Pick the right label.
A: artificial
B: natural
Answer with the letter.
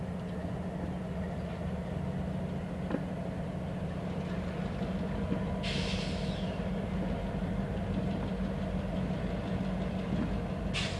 B